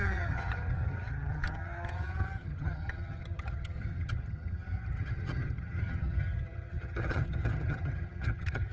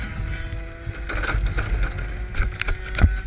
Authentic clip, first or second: second